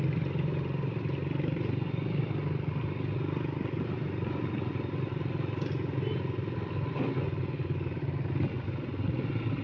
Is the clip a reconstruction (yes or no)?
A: no